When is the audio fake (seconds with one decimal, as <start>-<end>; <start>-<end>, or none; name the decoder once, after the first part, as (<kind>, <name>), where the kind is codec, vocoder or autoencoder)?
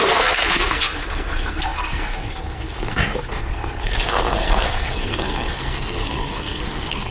0.0-7.1 (codec, SNAC)